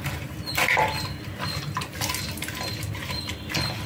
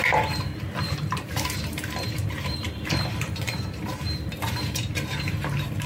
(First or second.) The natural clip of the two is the first